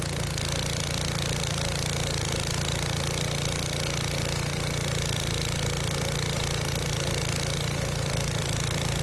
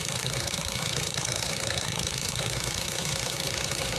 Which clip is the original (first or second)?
first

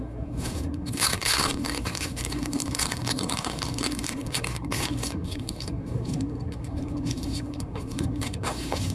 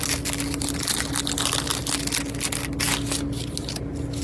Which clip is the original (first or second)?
second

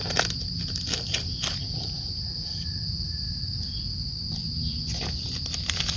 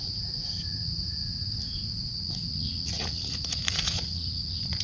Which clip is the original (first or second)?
first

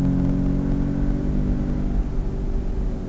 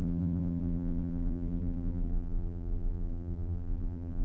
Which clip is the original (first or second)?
first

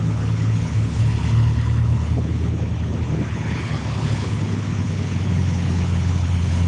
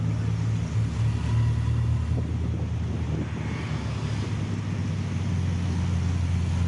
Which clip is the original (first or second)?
second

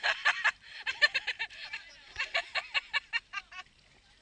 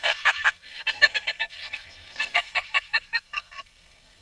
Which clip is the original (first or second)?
first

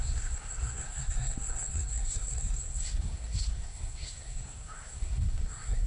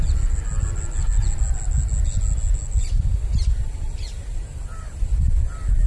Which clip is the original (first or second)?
second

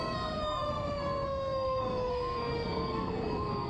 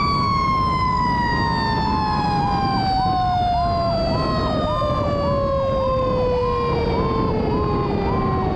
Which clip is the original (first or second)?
second